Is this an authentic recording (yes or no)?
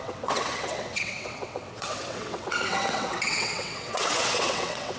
no